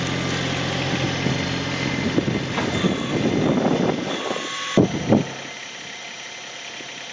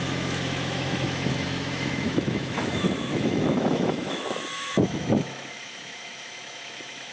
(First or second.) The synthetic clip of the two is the second